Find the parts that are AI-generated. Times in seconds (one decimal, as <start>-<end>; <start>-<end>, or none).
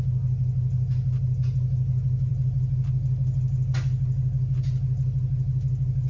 none